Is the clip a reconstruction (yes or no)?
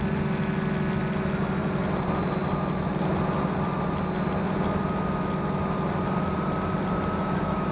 no